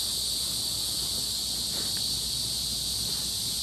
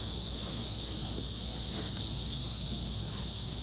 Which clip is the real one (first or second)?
first